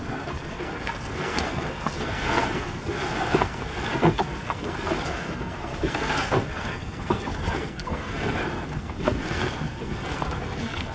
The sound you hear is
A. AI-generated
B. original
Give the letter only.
A